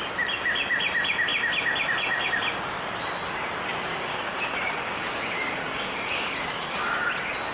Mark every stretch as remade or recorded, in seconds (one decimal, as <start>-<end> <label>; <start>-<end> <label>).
0.0-3.9 recorded; 3.9-7.1 remade; 7.1-7.5 recorded